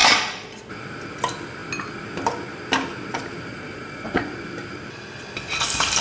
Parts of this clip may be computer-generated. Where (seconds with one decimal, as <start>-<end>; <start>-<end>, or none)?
0.0-0.7; 3.5-4.3